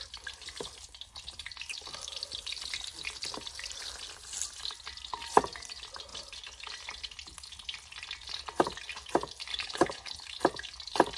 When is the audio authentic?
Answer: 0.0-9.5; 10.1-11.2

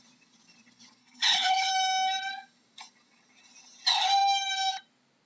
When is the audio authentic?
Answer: 0.0-1.0; 1.7-5.3

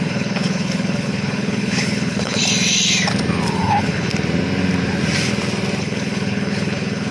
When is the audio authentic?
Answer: 2.4-3.5; 4.1-5.8